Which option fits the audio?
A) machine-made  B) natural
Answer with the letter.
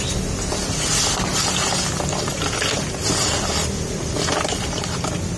B